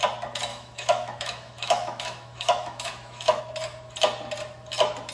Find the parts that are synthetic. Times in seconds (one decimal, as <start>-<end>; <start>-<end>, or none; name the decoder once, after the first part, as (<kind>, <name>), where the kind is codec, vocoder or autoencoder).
0.5-3.4 (autoencoder, DAC-VAE)